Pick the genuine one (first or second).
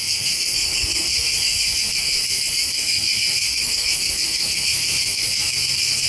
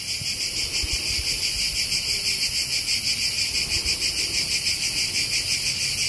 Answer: second